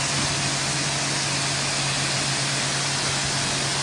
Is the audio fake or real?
real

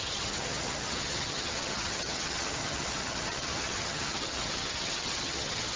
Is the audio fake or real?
fake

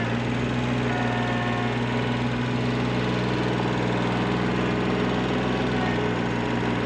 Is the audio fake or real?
real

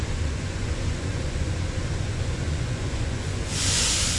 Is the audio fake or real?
fake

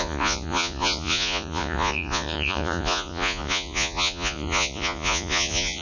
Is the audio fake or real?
fake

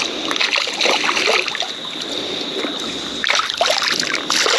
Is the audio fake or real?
real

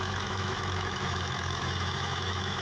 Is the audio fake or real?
fake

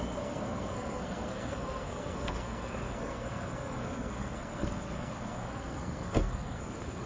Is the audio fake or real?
fake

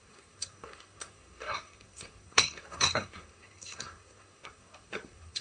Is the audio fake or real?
fake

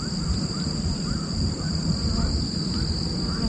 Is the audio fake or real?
real